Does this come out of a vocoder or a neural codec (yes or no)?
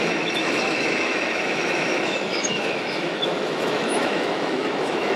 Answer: yes